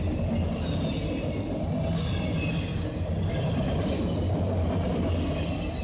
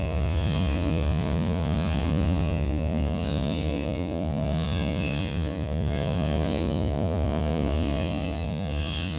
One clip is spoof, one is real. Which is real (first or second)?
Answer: first